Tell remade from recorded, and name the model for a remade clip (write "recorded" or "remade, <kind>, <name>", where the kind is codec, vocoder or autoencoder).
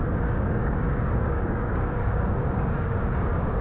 remade, codec, DAC